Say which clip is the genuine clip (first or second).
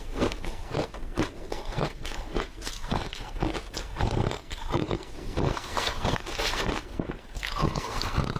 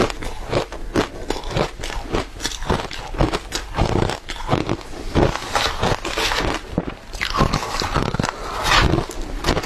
second